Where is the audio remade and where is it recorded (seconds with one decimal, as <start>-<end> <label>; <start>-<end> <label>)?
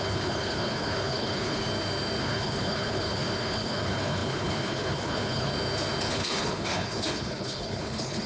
0.0-1.6 remade; 1.6-2.2 recorded; 2.2-5.5 remade; 5.5-6.1 recorded; 6.1-8.3 remade